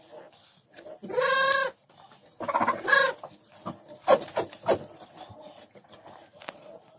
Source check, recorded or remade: recorded